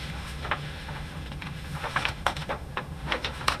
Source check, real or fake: fake